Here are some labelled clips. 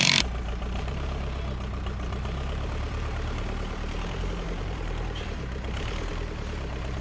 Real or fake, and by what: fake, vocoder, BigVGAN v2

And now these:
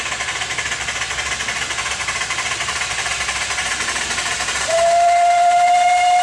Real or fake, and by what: real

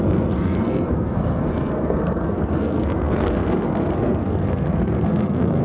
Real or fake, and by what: fake, codec, SNAC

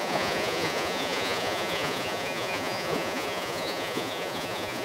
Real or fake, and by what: fake, vocoder, Vocos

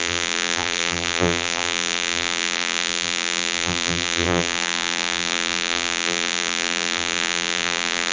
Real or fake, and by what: fake, vocoder, BigVGAN v2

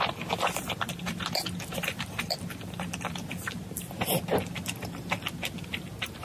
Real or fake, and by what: real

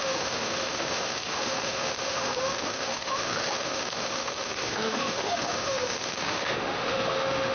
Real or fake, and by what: fake, autoencoder, DAC-VAE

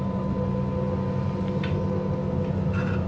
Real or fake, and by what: real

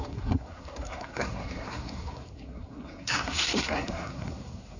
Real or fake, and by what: fake, codec, SNAC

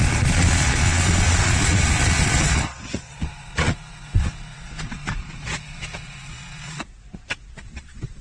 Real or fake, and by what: fake, vocoder, Vocos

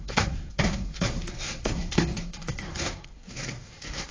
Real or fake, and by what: fake, codec, SNAC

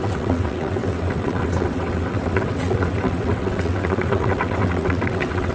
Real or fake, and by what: fake, vocoder, WaveNeXt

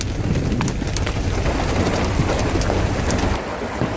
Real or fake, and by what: real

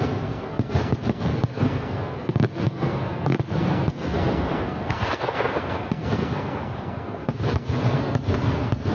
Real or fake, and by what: fake, codec, SNAC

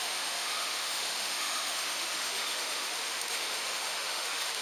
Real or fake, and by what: fake, autoencoder, DAC-VAE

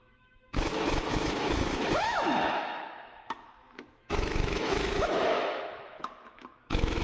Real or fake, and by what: fake, autoencoder, DAC-VAE